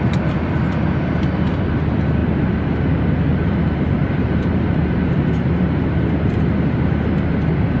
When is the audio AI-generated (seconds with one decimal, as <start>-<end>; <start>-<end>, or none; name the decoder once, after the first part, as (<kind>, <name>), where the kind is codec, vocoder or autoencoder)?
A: 4.0-5.3 (vocoder, BigVGAN v2)